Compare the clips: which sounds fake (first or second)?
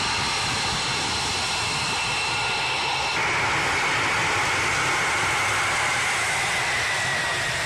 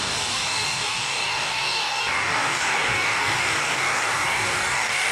second